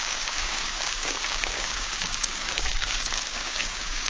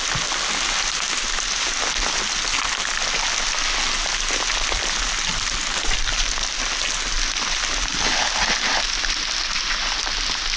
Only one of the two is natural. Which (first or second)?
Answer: second